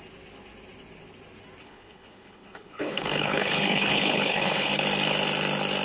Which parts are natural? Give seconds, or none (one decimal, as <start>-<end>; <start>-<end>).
0.0-1.6; 4.7-5.8